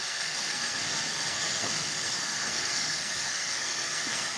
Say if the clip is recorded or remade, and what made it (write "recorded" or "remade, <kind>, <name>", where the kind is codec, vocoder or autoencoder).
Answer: remade, codec, SNAC